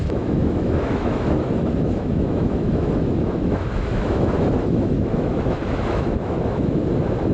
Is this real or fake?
fake